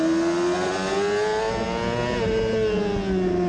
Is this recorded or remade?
recorded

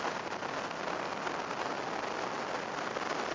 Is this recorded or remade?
recorded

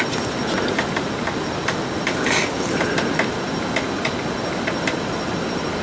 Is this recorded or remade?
recorded